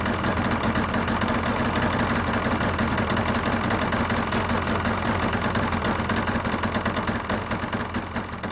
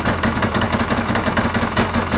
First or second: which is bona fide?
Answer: first